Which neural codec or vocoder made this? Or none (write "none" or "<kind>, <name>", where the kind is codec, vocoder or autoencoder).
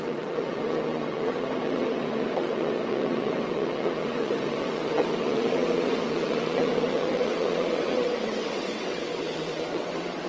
vocoder, WaveNeXt